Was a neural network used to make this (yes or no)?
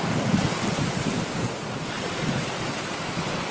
no